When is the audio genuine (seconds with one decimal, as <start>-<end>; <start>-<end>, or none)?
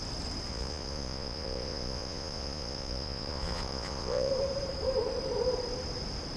0.0-0.5; 4.3-6.4